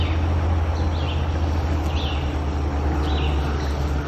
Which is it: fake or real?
real